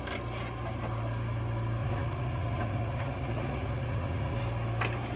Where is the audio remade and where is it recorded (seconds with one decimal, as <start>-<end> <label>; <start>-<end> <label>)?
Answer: 0.0-1.8 recorded; 1.8-4.4 remade; 4.4-5.2 recorded